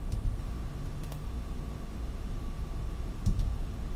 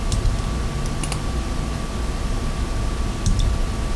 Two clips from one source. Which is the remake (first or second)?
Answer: first